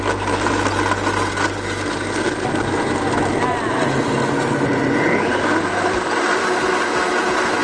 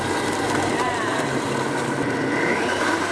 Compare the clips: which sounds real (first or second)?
first